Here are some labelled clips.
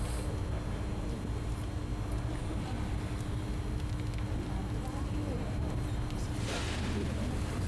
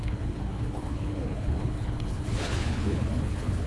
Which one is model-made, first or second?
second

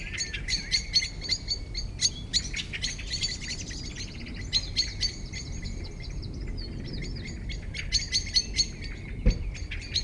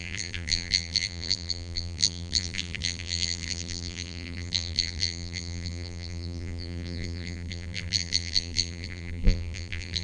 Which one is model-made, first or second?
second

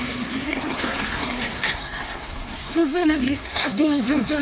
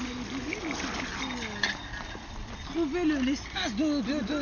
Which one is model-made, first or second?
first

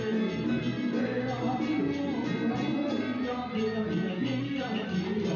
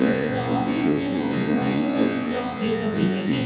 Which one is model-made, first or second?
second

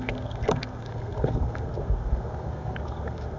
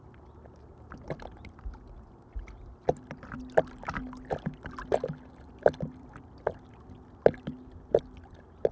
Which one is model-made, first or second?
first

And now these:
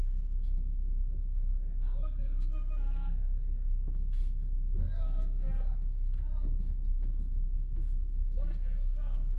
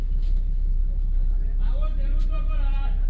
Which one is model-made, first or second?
first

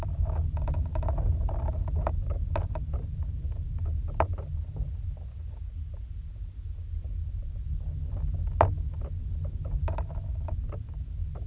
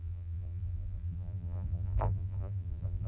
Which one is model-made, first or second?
second